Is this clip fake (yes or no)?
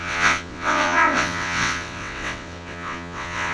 yes